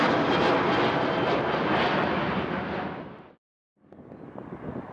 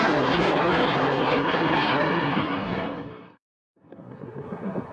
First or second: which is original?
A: first